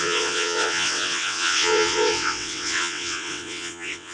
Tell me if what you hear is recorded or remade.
remade